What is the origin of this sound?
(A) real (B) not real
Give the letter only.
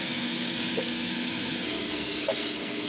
B